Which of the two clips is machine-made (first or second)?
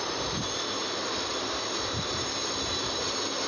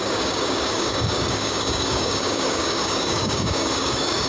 second